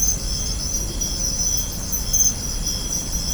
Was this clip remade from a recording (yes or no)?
no